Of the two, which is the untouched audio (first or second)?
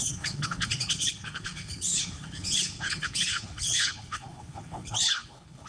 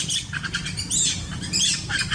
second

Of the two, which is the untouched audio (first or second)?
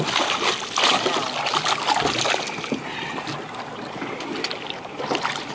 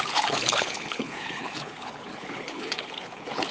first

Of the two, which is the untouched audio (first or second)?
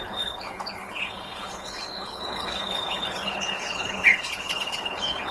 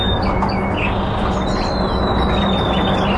second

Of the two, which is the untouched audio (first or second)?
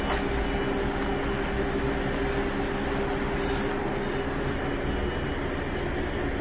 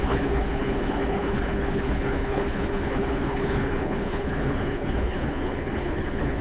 first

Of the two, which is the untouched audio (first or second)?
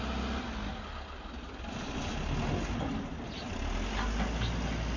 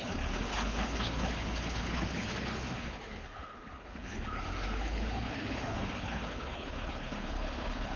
first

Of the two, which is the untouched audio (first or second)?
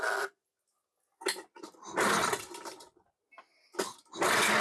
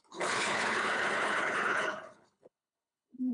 first